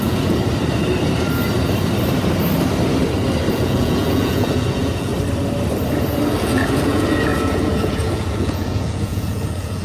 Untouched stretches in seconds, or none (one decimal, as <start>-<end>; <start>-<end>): 0.4-3.5; 5.1-6.3